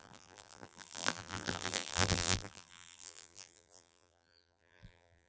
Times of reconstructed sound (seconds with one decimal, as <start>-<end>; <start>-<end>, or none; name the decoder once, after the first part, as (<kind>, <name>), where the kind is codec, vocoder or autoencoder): 0.0-5.3 (vocoder, BigVGAN v2)